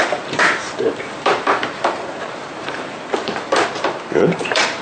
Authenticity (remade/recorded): remade